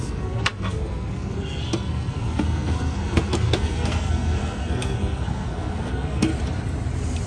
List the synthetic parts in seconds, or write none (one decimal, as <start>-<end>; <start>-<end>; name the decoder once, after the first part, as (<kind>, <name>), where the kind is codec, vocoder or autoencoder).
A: 0.0-6.3 (codec, SNAC)